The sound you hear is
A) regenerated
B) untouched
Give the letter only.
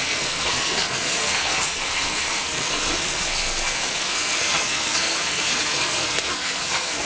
A